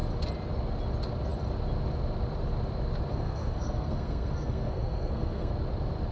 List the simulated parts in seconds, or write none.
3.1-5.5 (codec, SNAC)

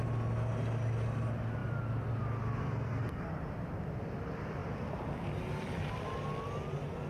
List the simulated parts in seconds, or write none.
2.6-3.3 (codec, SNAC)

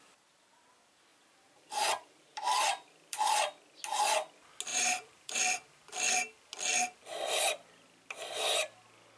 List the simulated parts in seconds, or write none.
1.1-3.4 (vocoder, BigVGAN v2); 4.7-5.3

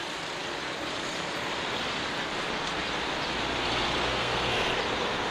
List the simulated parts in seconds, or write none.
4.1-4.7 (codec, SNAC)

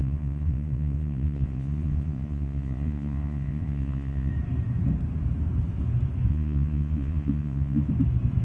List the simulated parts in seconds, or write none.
0.0-4.3 (vocoder, Vocos); 6.3-7.9

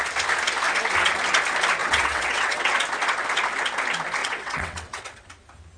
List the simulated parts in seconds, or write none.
1.8-2.7 (vocoder, WaveNeXt); 4.2-5.3

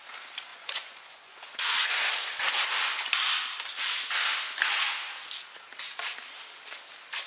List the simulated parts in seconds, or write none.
0.5-2.1 (vocoder, Vocos)